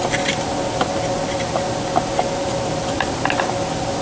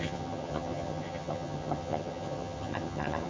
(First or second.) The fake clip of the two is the second